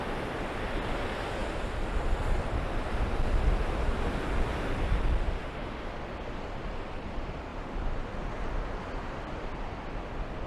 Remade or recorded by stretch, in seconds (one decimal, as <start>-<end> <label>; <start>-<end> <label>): 0.0-5.4 recorded; 5.4-5.9 remade; 5.9-10.5 recorded